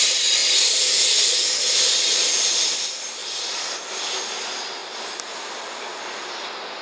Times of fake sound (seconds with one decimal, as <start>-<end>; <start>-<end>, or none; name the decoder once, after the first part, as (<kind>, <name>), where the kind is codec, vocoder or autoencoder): 0.0-3.2 (vocoder, BigVGAN v2); 4.2-6.8